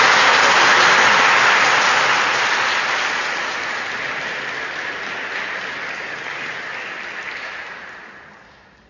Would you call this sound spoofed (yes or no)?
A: no